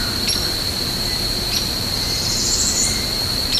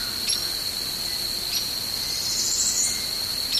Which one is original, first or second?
second